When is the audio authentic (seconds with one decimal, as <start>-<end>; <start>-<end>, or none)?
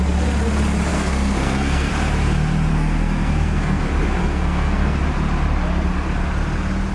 0.0-0.9; 1.9-2.7; 3.8-4.2; 5.0-6.9